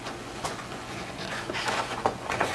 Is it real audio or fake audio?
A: fake